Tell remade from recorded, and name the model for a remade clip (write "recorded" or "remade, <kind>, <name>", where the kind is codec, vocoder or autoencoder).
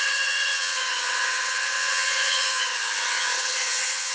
remade, vocoder, HiFi-GAN